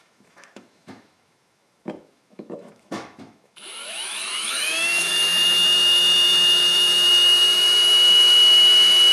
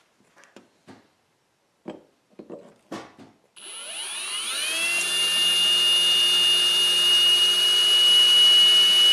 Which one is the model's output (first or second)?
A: first